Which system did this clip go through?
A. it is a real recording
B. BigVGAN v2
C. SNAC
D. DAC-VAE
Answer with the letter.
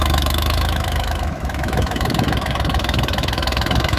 D